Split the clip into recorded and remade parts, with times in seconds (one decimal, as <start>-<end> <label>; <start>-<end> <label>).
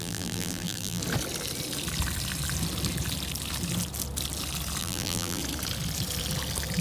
0.0-1.0 remade; 1.0-4.8 recorded; 4.8-5.4 remade; 5.4-6.8 recorded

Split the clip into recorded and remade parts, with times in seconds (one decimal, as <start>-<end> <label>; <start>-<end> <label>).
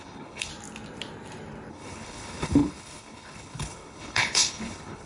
0.0-0.5 remade; 0.5-1.7 recorded; 1.7-5.1 remade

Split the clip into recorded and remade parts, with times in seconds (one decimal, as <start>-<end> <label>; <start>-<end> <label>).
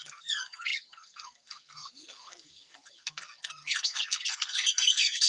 0.0-5.3 remade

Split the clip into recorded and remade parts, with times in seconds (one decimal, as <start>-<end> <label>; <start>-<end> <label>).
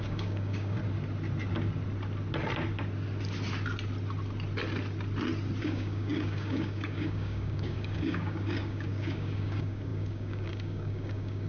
0.0-0.8 remade; 0.8-5.6 recorded; 5.6-11.5 remade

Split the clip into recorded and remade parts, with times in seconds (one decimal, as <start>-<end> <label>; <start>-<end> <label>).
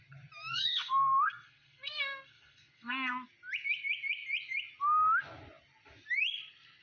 0.0-0.5 recorded; 0.5-3.1 remade; 3.1-6.8 recorded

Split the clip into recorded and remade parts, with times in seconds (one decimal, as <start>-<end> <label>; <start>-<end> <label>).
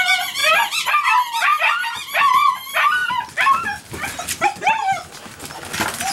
0.0-6.1 recorded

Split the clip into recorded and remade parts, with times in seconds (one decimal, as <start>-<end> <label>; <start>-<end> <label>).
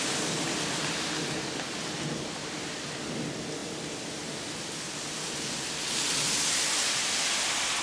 0.0-7.8 recorded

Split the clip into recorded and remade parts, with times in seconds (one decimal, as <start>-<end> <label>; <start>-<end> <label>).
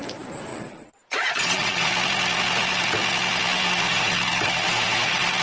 0.0-0.5 recorded; 0.5-1.9 remade; 1.9-5.4 recorded